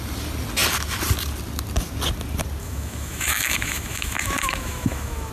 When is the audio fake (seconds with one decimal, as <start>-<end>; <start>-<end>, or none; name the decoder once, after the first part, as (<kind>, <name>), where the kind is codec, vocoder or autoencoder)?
2.6-5.3 (autoencoder, DAC-VAE)